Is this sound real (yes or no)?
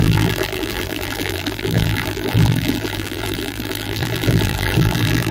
no